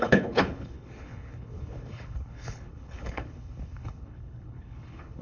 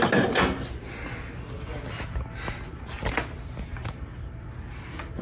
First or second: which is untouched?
second